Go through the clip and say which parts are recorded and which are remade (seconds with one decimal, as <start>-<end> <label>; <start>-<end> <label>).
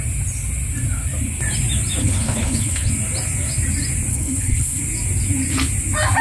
0.0-2.0 recorded; 2.0-2.9 remade; 2.9-4.1 recorded; 4.1-4.8 remade; 4.8-6.2 recorded